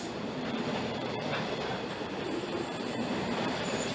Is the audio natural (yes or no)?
no